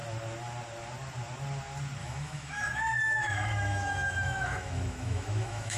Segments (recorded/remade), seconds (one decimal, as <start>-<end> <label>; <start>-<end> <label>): 0.0-2.0 recorded; 2.0-5.8 remade